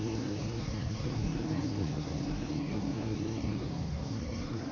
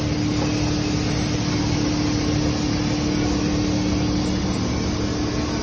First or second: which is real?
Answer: second